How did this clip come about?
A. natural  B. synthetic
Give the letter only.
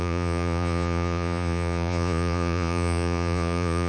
B